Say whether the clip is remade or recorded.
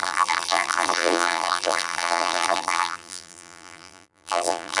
remade